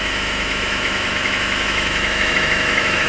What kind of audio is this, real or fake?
fake